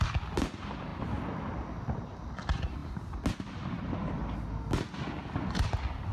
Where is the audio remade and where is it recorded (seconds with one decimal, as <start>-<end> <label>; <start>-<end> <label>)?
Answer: 0.0-6.1 recorded